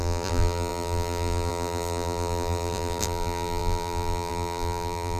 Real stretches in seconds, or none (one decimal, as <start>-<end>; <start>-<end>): none